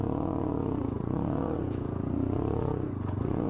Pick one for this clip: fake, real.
fake